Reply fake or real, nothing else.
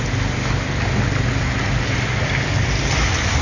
real